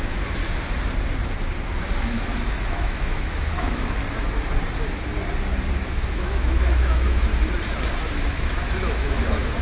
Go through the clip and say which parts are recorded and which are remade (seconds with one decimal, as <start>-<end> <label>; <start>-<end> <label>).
0.0-0.4 remade; 0.4-1.8 recorded; 1.8-4.0 remade; 4.0-5.9 recorded; 5.9-7.3 remade; 7.3-8.3 recorded; 8.3-9.6 remade